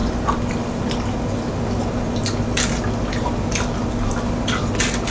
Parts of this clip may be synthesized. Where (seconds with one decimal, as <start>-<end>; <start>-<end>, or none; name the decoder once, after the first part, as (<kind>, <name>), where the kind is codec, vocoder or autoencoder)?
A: none